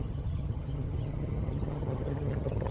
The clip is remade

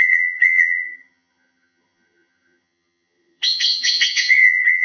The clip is remade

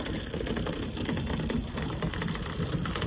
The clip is recorded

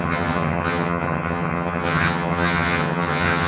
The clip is remade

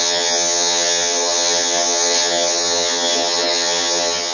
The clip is remade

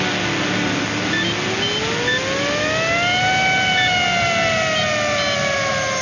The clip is recorded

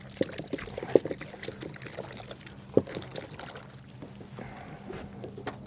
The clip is recorded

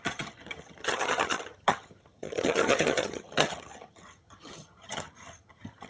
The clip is remade